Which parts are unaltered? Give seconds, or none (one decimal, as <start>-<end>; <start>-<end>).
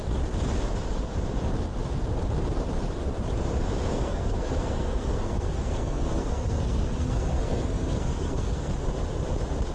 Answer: 0.0-3.9; 8.7-9.7